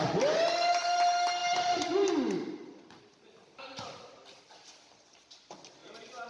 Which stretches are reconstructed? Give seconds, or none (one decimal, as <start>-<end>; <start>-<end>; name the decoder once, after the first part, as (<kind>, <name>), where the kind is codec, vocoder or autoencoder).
1.4-2.1 (vocoder, BigVGAN v2); 3.4-4.6; 5.8-6.3